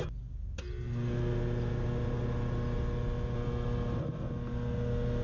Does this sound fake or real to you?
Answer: real